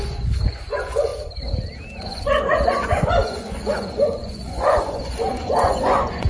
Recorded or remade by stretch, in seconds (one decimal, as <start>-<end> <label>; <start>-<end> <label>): 0.0-1.1 remade; 1.1-2.0 recorded; 2.0-6.3 remade